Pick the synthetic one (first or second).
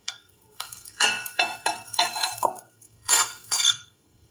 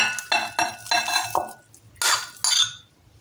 first